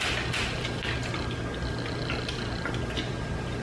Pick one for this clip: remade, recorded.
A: recorded